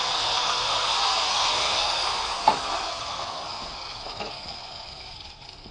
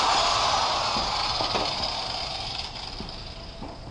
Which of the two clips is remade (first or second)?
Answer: first